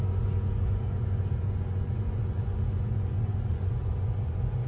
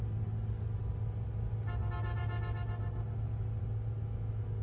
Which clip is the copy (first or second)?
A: first